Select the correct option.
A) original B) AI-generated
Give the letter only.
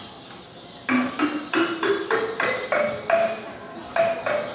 A